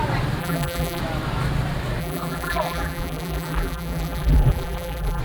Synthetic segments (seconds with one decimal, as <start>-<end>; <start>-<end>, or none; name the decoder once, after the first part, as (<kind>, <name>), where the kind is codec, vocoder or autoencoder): 0.4-1.0 (vocoder, BigVGAN v2); 2.0-5.2